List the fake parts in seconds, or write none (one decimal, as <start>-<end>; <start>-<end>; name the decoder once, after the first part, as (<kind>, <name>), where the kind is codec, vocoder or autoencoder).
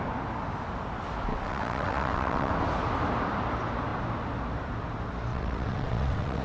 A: 1.3-2.5 (vocoder, WaveNeXt); 5.3-6.4